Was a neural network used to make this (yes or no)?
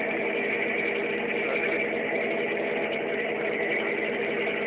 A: no